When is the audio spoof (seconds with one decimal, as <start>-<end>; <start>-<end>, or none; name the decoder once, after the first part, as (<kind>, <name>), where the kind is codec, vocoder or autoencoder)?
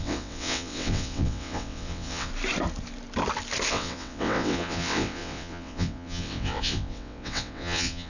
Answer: 0.0-2.3 (vocoder, WaveNeXt); 3.7-8.1